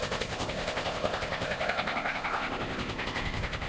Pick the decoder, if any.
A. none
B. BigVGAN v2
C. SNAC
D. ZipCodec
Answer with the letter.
D